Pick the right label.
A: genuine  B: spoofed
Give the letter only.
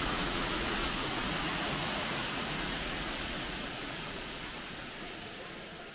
B